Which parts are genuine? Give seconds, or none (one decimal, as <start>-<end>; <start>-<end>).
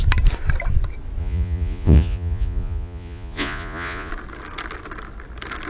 0.0-1.2; 4.1-5.7